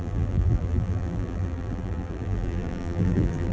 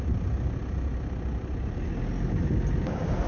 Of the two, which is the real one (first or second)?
second